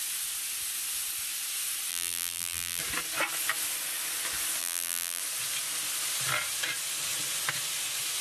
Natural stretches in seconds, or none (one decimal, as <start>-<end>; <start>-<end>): 0.0-1.9; 2.8-4.6; 5.2-8.2